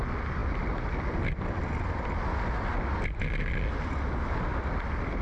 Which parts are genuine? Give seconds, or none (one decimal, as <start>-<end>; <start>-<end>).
0.0-5.2